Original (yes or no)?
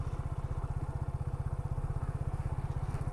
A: yes